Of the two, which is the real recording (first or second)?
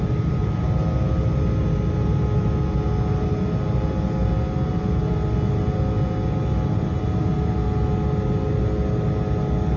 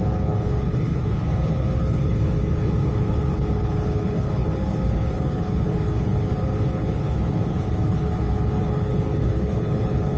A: first